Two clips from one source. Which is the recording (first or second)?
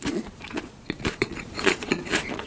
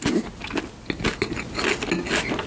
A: second